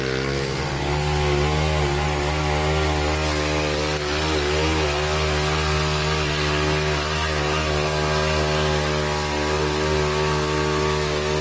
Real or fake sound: real